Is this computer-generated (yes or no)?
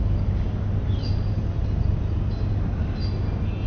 no